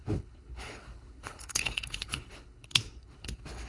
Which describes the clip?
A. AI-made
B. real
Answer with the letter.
A